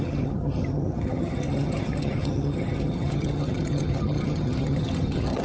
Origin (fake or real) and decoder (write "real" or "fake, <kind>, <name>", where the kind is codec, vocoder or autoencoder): fake, vocoder, HiFi-GAN